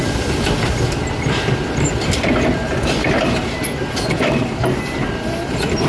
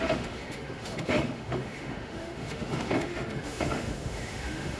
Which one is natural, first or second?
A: first